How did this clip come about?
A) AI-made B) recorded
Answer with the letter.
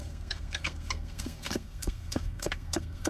A